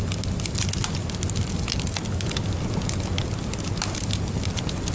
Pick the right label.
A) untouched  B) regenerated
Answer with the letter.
A